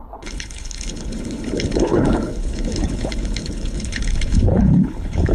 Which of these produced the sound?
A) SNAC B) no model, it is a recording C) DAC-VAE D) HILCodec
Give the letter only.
D